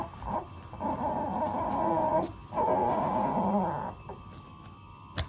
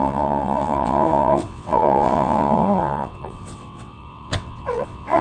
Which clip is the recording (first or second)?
first